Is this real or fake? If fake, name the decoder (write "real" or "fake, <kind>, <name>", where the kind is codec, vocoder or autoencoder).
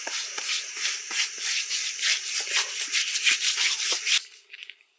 real